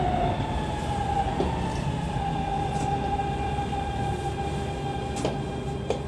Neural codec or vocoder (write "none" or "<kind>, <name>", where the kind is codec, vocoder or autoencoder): none